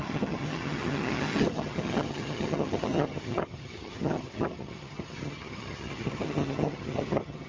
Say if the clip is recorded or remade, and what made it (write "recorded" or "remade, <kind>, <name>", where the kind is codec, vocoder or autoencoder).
remade, vocoder, HiFi-GAN